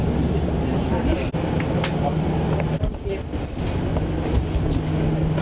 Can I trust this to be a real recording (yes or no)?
yes